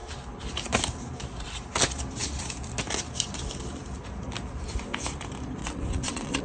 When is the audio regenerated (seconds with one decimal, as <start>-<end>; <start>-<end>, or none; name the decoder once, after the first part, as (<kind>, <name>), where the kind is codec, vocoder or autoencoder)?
5.6-6.4 (vocoder, WaveNeXt)